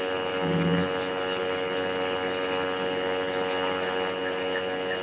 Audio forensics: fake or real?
real